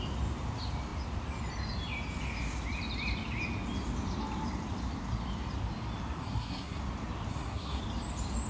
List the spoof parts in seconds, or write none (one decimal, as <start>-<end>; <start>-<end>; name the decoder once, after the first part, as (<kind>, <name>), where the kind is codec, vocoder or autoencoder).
6.2-6.8 (codec, SNAC); 7.3-7.8